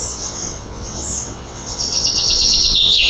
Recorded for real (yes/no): no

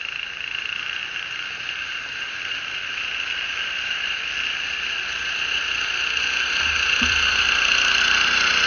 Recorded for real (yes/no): no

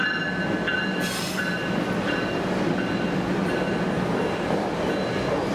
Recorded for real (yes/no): yes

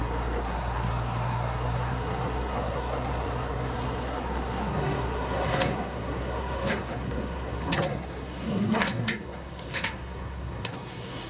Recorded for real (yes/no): no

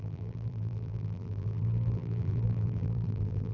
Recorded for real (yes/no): no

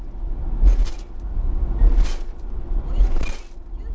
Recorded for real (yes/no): yes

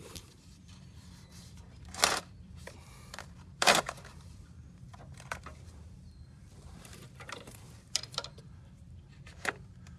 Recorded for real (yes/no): no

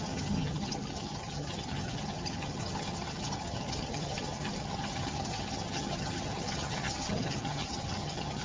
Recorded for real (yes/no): no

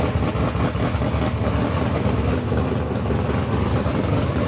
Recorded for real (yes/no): yes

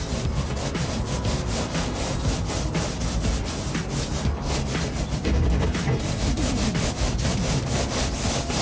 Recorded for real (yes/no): yes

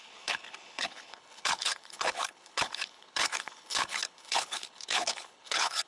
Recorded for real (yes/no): no